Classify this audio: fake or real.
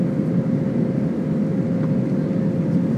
real